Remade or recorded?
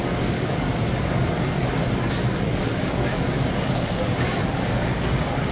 remade